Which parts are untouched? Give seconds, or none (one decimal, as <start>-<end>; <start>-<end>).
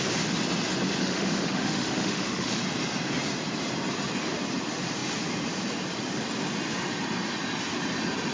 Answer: 0.0-1.0; 2.6-8.3